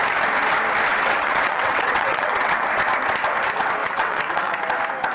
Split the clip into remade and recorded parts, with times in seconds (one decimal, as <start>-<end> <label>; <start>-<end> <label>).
0.0-0.9 recorded; 0.9-2.6 remade; 2.6-3.8 recorded; 3.8-4.6 remade; 4.6-5.1 recorded